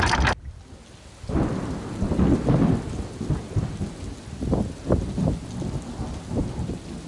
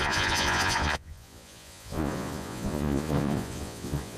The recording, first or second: first